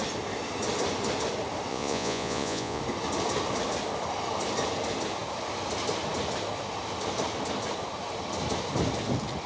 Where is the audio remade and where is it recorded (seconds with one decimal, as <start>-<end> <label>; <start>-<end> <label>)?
0.0-1.7 recorded; 1.7-2.8 remade; 2.8-9.5 recorded